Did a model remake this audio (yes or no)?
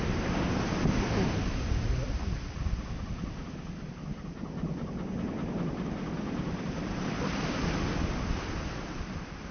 no